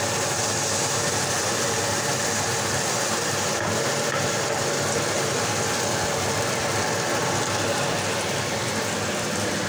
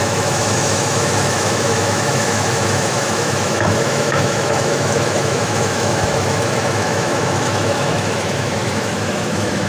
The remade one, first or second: second